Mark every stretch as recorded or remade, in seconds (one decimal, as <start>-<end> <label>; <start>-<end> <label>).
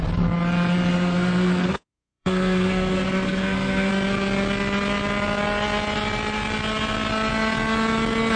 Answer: 0.0-0.9 recorded; 0.9-3.9 remade; 3.9-8.4 recorded